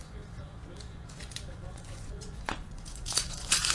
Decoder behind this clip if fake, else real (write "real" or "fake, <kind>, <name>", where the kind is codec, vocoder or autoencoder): fake, vocoder, Vocos